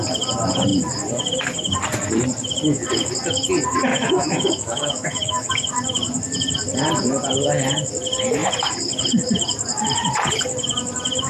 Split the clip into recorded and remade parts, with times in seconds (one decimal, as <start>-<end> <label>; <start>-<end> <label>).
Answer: 0.0-3.9 recorded; 3.9-5.5 remade; 5.5-11.3 recorded